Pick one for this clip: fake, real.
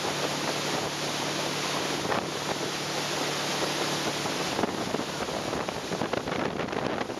real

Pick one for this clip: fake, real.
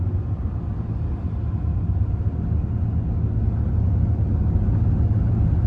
real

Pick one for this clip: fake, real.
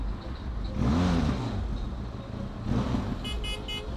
real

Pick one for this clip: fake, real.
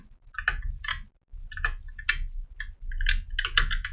real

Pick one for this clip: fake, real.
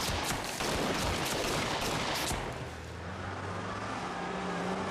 real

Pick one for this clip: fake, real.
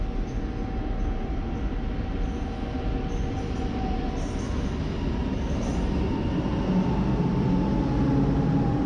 real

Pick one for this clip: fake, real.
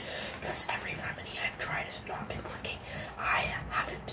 real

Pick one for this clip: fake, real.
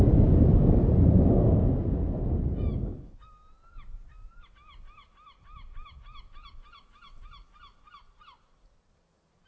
real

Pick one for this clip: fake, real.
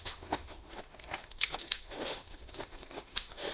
fake